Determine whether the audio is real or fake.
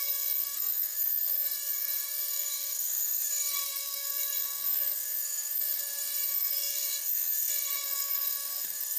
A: fake